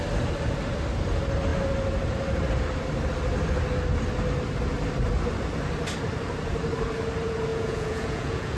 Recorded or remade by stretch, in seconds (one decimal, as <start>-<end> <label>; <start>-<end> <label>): 0.0-7.5 recorded; 7.5-8.6 remade